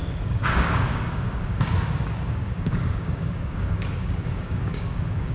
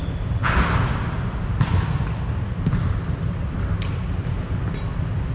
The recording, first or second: second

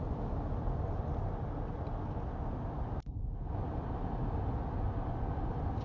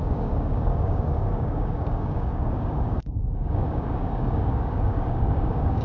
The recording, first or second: first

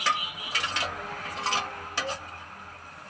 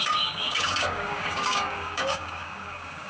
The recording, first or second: first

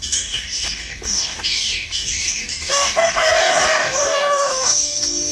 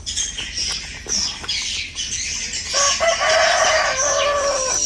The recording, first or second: second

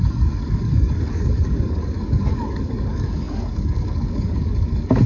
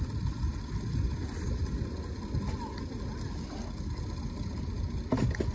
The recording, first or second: second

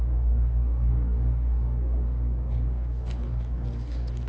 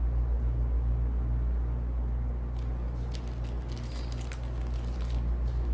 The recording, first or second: second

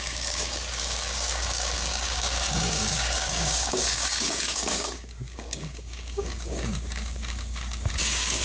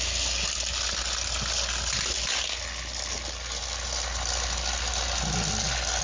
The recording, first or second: second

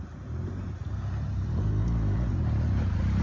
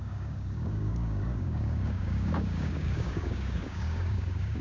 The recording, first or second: first